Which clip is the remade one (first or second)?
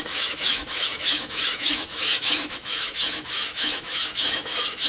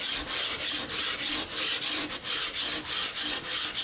first